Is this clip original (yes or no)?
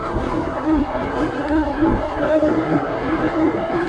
no